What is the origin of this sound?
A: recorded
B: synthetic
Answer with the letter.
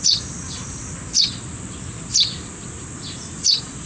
A